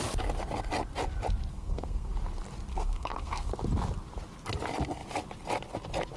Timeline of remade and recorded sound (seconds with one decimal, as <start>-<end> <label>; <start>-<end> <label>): 0.0-1.5 recorded; 1.5-2.1 remade; 2.1-2.7 recorded; 2.7-3.5 remade; 3.5-6.2 recorded